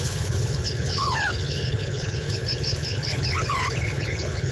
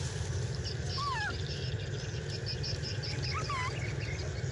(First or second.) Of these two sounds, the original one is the second